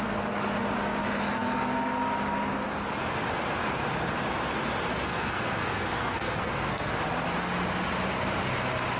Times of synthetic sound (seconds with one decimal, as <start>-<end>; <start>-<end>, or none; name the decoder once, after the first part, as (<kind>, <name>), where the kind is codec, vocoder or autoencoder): 4.9-6.9 (codec, SNAC)